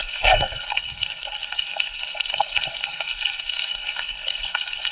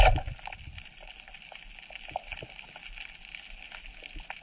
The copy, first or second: first